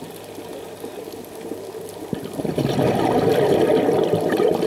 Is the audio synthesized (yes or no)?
no